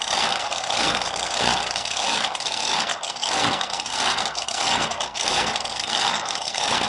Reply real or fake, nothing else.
fake